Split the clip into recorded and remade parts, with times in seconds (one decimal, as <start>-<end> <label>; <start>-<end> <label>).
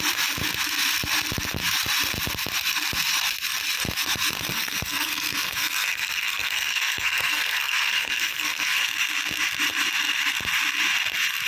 0.0-4.5 recorded; 4.5-8.8 remade; 8.8-11.5 recorded